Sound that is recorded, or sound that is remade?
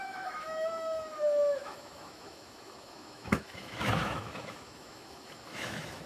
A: remade